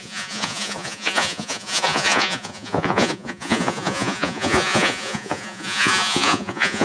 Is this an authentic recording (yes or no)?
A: no